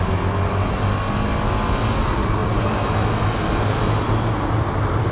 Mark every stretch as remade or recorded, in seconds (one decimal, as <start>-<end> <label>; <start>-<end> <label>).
0.0-5.1 recorded